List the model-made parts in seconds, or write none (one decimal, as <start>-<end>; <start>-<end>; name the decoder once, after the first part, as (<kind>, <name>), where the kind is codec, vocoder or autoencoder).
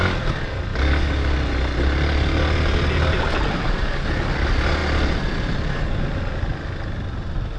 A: 0.7-1.3 (codec, DAC)